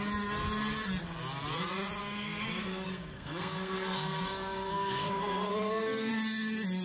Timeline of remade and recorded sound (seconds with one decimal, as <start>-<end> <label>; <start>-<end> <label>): 0.0-2.0 recorded; 2.0-6.1 remade; 6.1-6.8 recorded